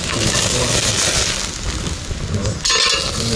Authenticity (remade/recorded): recorded